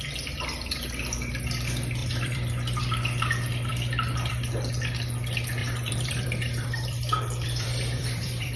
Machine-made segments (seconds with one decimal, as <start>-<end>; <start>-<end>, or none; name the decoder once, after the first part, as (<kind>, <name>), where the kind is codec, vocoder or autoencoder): 2.0-2.8 (vocoder, BigVGAN v2); 5.6-8.6